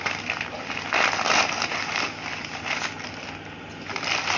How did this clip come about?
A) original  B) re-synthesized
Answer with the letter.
A